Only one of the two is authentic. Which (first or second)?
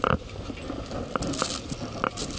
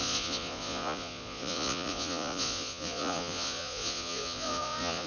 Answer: first